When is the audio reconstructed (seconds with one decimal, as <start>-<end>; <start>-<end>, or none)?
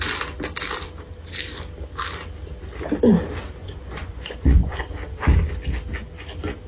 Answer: 3.6-4.7